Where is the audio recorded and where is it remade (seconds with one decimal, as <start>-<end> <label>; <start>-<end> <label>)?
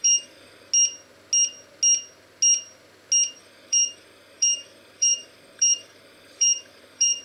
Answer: 0.0-0.7 remade; 0.7-3.4 recorded; 3.4-7.2 remade